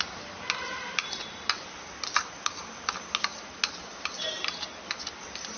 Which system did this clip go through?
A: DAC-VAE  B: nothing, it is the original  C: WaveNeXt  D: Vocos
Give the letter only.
B